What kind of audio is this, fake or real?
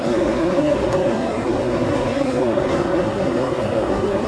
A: fake